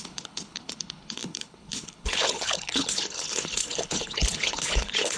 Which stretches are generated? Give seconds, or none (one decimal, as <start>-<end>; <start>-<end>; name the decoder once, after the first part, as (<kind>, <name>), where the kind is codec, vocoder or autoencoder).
0.0-5.2 (codec, HILCodec)